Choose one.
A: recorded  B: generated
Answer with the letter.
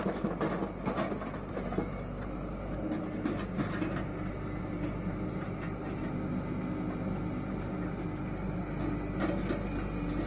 A